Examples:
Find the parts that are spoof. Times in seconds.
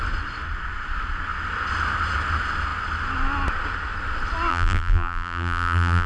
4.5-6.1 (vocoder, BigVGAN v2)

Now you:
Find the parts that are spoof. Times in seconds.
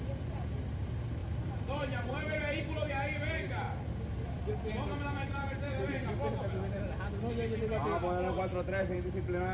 1.2-2.9 (vocoder, BigVGAN v2)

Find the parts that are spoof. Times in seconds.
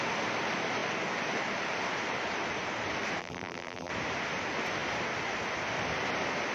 3.2-3.9 (vocoder, BigVGAN v2)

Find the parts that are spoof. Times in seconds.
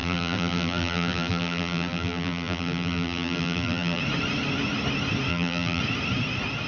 0.0-4.0 (vocoder, BigVGAN v2); 5.3-5.8